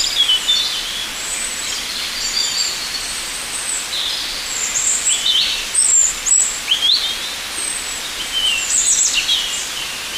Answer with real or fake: real